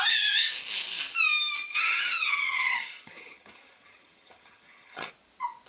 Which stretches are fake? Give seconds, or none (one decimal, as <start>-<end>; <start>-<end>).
1.7-5.1